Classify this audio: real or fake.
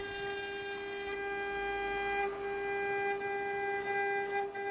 real